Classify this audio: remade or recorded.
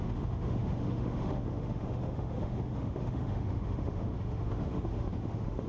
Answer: remade